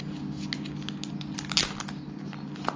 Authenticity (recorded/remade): recorded